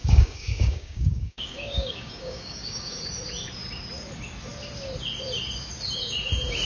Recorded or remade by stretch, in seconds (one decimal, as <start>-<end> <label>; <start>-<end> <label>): 0.0-3.0 remade; 3.0-6.6 recorded